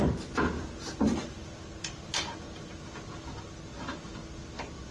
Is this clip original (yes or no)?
yes